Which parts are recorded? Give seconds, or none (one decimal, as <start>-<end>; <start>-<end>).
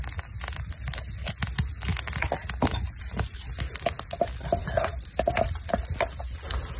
0.0-6.8